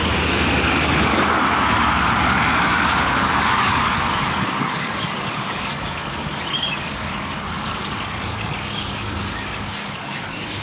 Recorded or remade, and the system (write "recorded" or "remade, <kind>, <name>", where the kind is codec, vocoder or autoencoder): remade, codec, DAC